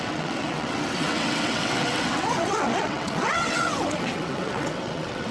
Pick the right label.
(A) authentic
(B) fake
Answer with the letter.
B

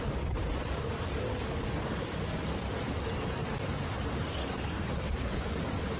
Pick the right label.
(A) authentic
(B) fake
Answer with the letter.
A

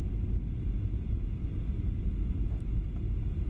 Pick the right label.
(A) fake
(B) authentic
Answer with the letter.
B